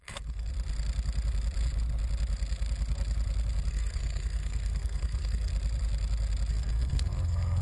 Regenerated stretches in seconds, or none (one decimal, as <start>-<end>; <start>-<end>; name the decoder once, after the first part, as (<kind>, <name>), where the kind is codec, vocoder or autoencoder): 0.0-0.5 (codec, SNAC); 3.7-5.5; 6.5-7.6